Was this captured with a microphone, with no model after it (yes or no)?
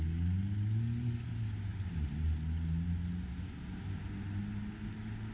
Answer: yes